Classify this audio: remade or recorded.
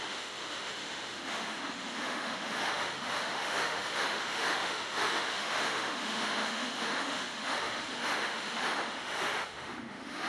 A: remade